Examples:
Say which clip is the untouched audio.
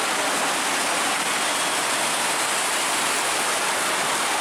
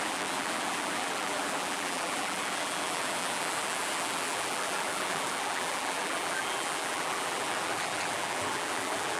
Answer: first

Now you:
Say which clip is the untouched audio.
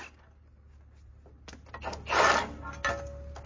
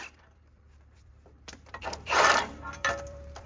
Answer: first